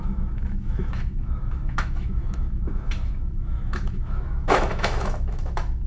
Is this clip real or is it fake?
fake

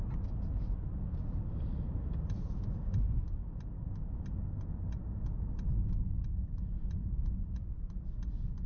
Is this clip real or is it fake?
real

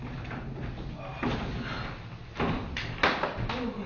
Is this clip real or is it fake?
real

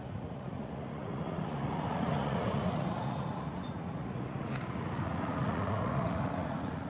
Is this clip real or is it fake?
fake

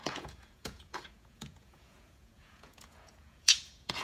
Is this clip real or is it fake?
fake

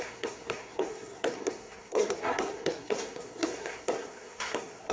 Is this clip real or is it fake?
fake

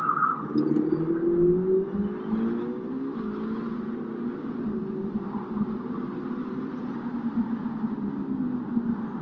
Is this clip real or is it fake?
real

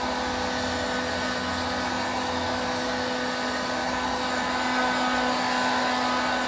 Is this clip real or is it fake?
real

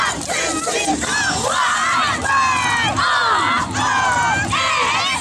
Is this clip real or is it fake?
real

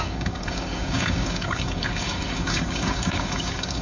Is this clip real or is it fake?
fake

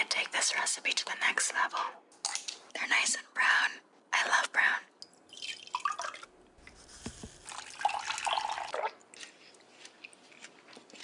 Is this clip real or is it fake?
real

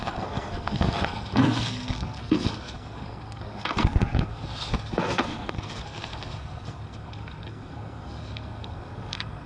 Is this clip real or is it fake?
fake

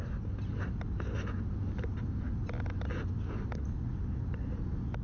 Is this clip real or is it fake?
real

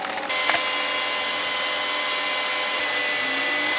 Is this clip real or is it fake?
real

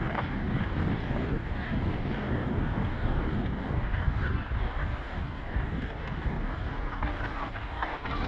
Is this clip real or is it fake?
fake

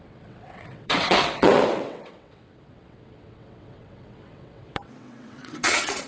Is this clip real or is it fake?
fake